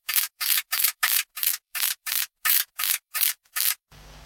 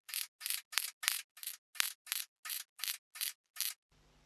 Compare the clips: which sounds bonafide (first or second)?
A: second